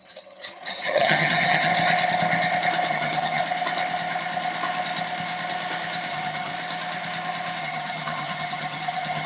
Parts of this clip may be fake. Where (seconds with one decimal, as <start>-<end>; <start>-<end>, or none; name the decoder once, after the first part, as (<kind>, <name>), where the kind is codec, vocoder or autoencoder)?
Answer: 0.0-1.7 (vocoder, HiFi-GAN); 2.9-3.4; 6.1-6.5; 7.6-9.3